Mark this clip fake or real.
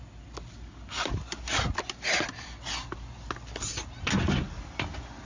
real